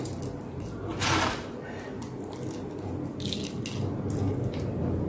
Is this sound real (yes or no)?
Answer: yes